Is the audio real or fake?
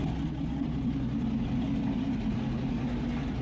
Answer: real